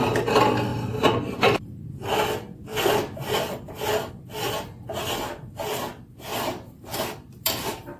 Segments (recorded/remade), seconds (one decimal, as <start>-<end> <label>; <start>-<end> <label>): 0.0-2.7 recorded; 2.7-4.1 remade; 4.1-6.3 recorded; 6.3-8.0 remade

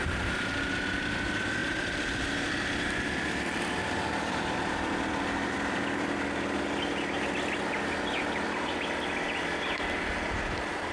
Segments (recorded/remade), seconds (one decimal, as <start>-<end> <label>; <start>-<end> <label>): 0.0-1.6 recorded; 1.6-4.6 remade; 4.6-10.9 recorded

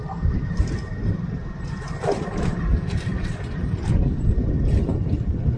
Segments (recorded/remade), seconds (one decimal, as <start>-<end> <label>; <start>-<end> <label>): 0.0-5.6 remade